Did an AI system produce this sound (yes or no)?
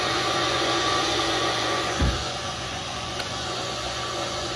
yes